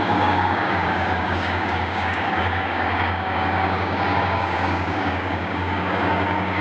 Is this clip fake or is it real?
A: fake